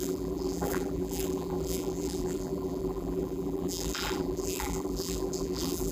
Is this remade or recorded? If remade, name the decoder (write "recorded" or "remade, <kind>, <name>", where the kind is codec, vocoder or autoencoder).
remade, vocoder, BigVGAN v2